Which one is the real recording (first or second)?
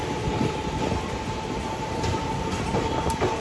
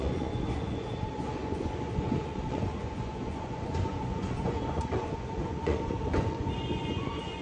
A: first